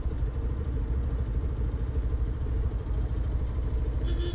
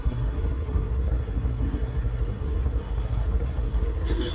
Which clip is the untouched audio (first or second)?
first